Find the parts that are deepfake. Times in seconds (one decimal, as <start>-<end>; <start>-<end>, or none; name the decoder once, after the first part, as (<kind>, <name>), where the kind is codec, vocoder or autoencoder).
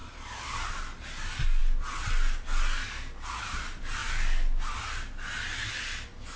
0.0-0.7 (vocoder, BigVGAN v2)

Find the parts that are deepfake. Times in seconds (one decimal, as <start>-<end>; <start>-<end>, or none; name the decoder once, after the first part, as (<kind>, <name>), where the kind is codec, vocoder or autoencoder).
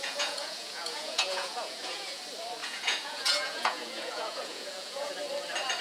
0.0-2.2 (vocoder, Vocos); 2.6-5.1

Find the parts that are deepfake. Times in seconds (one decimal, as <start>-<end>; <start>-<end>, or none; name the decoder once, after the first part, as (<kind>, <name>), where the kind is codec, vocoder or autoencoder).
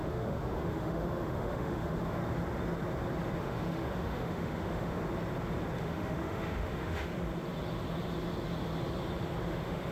0.0-2.2 (autoencoder, DAC-VAE); 3.4-5.0; 5.8-7.1; 9.4-9.9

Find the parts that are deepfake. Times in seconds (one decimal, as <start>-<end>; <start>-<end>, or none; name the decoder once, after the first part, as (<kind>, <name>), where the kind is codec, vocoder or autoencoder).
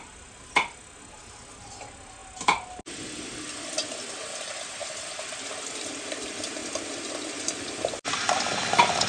none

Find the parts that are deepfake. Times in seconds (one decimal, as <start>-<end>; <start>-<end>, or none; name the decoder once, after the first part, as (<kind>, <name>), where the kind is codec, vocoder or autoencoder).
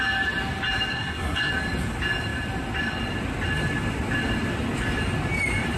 0.9-1.5 (codec, SNAC)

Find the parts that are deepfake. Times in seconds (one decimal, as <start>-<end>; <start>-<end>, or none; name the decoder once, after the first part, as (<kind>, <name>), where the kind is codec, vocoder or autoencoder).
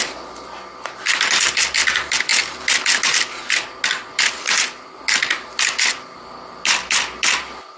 none